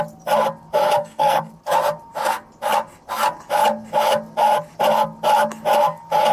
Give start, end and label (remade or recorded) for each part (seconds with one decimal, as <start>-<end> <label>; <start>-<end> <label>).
0.0-1.0 recorded; 1.0-1.5 remade; 1.5-6.3 recorded